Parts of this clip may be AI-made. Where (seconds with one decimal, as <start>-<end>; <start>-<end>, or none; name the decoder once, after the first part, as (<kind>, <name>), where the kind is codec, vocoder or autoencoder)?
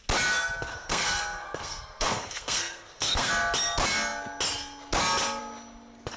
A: 0.7-3.3 (codec, SNAC)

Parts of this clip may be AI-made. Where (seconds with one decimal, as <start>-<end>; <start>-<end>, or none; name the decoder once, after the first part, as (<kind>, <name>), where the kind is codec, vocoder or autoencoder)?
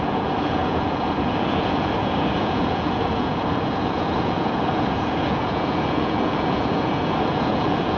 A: 0.0-8.0 (vocoder, Vocos)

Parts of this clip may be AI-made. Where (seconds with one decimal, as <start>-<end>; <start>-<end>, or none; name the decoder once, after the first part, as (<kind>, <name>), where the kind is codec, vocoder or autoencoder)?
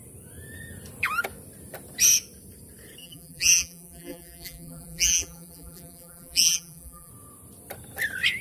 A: 3.0-7.1 (vocoder, BigVGAN v2)